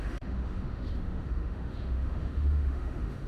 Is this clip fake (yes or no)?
yes